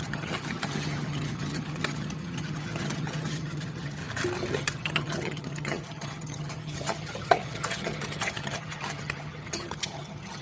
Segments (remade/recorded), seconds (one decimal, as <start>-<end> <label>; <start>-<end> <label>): 0.0-4.0 remade; 4.0-4.5 recorded; 4.5-10.4 remade